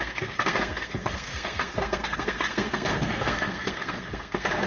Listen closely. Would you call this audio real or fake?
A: fake